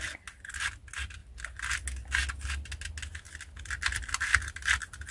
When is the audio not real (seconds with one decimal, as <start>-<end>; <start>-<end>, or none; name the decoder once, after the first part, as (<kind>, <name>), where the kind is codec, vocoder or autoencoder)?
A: none